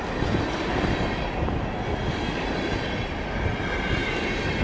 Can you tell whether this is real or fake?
real